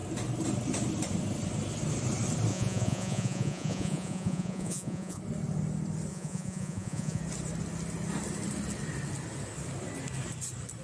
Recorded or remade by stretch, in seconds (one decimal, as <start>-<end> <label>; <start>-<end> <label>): 0.0-2.5 recorded; 2.5-5.2 remade; 5.2-6.1 recorded; 6.1-7.2 remade; 7.2-10.8 recorded